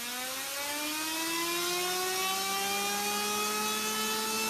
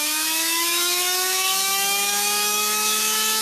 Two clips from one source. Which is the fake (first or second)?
second